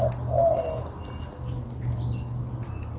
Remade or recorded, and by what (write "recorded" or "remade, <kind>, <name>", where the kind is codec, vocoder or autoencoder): recorded